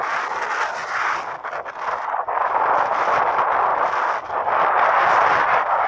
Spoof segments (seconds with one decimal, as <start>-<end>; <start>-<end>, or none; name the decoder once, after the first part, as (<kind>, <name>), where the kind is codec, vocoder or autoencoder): none